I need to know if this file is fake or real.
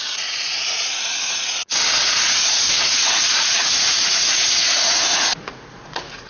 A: fake